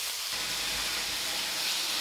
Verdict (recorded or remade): recorded